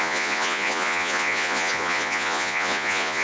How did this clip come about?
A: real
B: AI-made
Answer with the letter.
B